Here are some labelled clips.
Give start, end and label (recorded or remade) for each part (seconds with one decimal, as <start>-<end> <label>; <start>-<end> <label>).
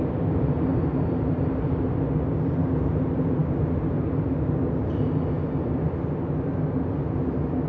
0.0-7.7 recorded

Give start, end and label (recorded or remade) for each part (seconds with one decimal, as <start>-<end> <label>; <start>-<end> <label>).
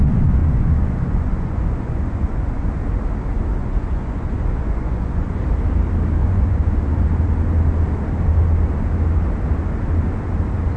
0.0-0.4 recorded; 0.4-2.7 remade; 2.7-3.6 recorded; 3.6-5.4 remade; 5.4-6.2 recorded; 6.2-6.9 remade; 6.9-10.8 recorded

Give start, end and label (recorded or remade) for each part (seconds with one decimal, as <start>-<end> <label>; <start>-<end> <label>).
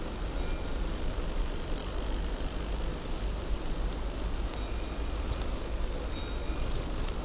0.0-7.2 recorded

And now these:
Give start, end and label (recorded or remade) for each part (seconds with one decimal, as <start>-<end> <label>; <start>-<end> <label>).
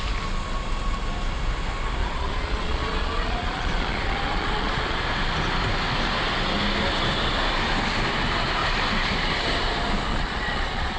0.0-2.0 recorded; 2.0-5.0 remade; 5.0-10.1 recorded; 10.1-11.0 remade